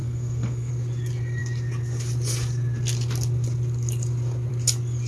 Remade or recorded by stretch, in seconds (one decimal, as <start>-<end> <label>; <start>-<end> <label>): 0.0-0.7 remade; 0.7-5.1 recorded